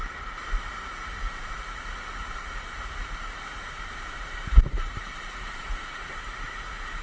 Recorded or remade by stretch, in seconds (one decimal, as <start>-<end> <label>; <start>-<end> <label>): 0.0-0.8 recorded; 0.8-7.0 remade